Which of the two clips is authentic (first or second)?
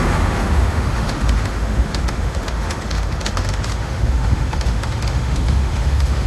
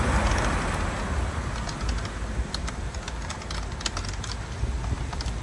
second